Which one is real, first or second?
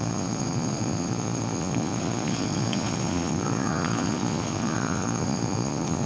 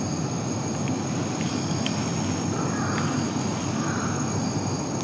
second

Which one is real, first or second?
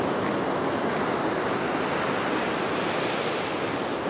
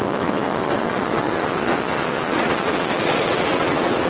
first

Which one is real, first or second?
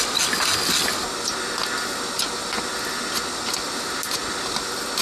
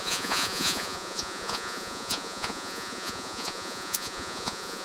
first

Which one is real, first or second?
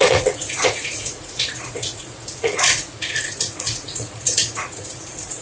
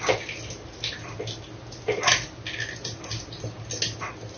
second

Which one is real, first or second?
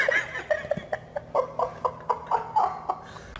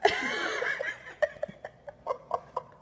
first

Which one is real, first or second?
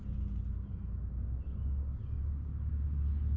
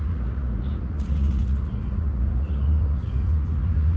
first